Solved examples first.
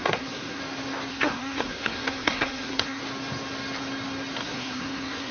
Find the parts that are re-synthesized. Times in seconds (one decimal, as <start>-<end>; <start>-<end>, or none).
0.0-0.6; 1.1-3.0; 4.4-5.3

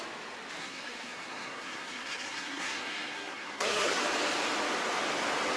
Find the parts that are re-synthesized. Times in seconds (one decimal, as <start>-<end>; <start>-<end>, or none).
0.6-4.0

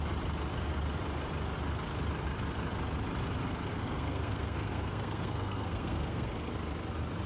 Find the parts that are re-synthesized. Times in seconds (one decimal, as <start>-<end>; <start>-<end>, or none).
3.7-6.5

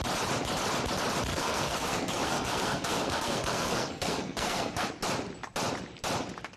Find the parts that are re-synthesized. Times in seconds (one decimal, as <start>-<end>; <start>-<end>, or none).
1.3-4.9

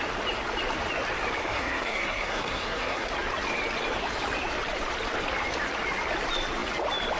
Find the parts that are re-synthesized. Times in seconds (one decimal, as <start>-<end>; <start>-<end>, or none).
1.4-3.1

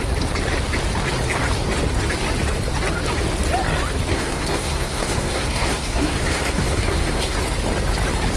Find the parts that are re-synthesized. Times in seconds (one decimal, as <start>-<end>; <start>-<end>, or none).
4.1-7.4

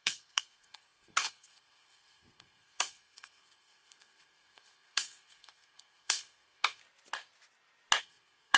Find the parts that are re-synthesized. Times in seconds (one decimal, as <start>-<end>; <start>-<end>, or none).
0.0-6.8; 8.0-8.6